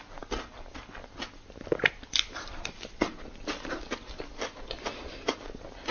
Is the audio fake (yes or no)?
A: no